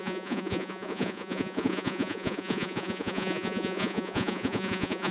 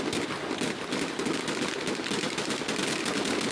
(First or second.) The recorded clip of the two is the second